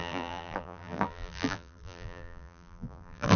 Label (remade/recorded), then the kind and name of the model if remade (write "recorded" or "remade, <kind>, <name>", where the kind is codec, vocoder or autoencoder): remade, vocoder, BigVGAN v2